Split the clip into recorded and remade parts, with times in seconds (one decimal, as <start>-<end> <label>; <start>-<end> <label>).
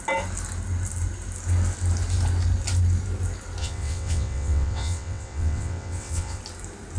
0.0-3.6 recorded; 3.6-6.4 remade; 6.4-7.0 recorded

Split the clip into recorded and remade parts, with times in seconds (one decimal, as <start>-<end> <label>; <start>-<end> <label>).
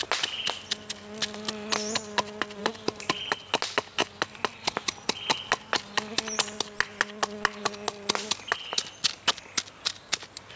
0.0-2.6 recorded; 2.6-3.2 remade; 3.2-10.6 recorded